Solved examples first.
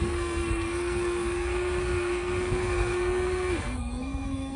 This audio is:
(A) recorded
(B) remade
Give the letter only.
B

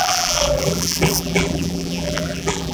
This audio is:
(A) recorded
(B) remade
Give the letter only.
B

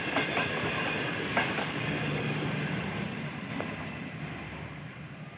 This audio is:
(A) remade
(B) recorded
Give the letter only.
A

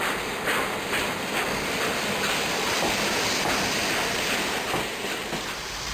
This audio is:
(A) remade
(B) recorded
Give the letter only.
B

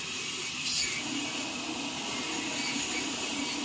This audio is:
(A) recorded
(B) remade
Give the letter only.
A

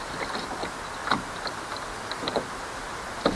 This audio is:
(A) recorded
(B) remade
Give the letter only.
A